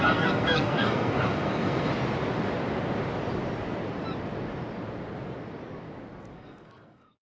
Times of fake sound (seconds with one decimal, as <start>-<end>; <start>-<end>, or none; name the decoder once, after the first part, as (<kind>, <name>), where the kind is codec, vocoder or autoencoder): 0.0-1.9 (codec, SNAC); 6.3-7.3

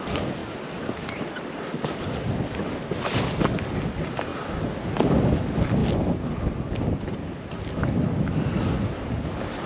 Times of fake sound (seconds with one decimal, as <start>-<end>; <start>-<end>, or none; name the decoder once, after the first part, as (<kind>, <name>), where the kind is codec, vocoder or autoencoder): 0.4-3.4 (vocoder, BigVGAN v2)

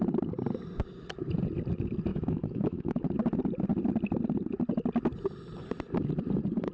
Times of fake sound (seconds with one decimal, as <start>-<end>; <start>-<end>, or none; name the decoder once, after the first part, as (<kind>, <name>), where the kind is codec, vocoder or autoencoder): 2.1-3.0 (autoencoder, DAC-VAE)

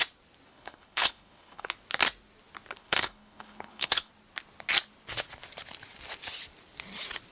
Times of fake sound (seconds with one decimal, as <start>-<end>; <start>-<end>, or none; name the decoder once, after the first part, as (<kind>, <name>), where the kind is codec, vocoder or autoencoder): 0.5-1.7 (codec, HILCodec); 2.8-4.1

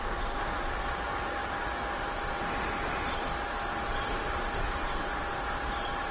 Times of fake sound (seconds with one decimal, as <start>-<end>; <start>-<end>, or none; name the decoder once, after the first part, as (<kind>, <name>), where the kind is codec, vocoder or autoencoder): none

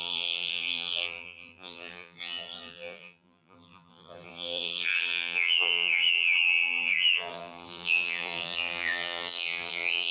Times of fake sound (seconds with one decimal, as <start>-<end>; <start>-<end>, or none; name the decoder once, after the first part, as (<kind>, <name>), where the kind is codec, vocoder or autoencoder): 0.0-10.1 (vocoder, BigVGAN v2)